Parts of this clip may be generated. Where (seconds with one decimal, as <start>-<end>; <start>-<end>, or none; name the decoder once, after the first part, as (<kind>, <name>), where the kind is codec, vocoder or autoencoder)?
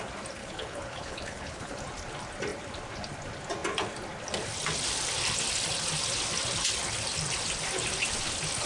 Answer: 0.4-1.7 (codec, HILCodec)